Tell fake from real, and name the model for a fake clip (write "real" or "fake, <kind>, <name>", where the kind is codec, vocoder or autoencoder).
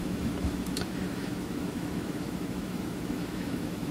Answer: fake, autoencoder, DAC-VAE